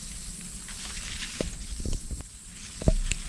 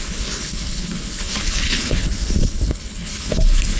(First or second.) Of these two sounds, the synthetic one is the second